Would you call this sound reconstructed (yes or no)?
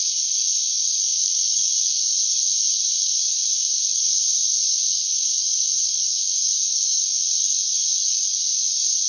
yes